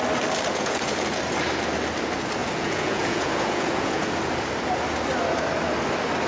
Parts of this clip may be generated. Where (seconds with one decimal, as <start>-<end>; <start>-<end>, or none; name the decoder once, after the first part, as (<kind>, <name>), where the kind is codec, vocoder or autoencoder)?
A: 0.5-1.2 (vocoder, Vocos); 2.4-4.1